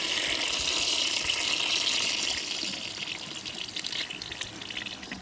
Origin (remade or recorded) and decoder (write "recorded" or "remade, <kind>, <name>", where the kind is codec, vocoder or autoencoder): recorded